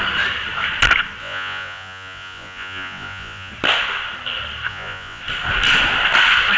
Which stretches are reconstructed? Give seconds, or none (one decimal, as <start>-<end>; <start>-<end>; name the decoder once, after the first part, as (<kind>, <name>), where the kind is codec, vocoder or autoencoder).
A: 1.2-3.5 (vocoder, Vocos); 4.7-5.2